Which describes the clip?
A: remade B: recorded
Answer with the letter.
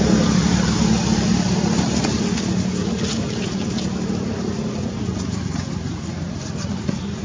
B